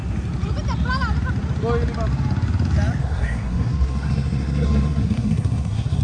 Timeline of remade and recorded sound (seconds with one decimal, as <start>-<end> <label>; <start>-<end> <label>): 0.0-3.0 recorded; 3.0-6.0 remade